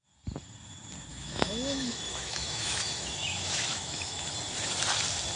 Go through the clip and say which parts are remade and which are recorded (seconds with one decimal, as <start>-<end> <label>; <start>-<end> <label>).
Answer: 0.0-1.1 recorded; 1.1-4.3 remade; 4.3-5.4 recorded

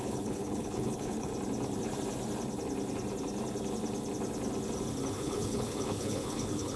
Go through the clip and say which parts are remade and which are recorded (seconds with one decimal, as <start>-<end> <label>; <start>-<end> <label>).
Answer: 0.0-1.3 remade; 1.3-5.1 recorded; 5.1-6.8 remade

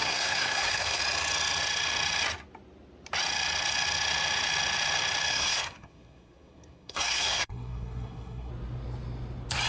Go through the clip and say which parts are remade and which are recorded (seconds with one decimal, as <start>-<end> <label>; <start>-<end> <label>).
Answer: 0.0-1.0 remade; 1.0-5.3 recorded; 5.3-8.5 remade; 8.5-9.7 recorded

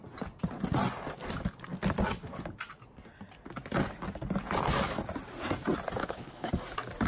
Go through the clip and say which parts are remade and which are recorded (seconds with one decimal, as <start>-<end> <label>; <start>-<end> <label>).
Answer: 0.0-6.0 recorded; 6.0-6.5 remade; 6.5-7.1 recorded

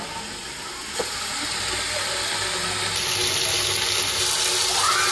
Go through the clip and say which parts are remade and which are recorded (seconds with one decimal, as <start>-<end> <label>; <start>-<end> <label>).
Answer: 0.0-0.4 recorded; 0.4-1.3 remade; 1.3-5.1 recorded

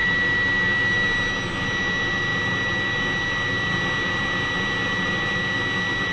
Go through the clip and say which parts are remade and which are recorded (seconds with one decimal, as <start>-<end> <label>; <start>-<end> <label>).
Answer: 0.0-6.1 recorded